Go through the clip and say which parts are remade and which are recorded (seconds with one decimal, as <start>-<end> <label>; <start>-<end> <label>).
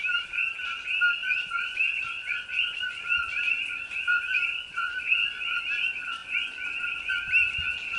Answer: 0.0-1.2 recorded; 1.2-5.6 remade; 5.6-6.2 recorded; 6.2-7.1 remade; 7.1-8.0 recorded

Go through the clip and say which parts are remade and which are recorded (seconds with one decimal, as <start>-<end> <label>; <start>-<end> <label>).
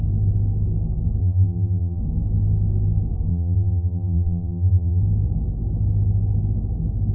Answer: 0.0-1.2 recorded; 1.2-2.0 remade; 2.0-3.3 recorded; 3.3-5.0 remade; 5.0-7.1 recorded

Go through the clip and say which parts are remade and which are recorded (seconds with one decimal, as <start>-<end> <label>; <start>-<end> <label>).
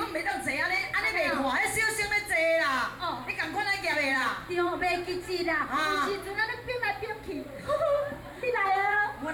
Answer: 0.0-0.8 remade; 0.8-4.1 recorded; 4.1-9.3 remade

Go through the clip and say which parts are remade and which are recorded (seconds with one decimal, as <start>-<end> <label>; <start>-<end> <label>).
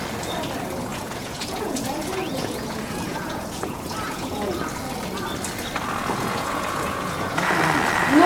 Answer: 0.0-0.9 recorded; 0.9-4.7 remade; 4.7-6.0 recorded; 6.0-7.5 remade; 7.5-8.3 recorded